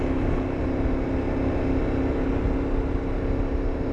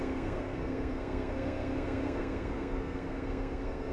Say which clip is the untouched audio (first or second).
first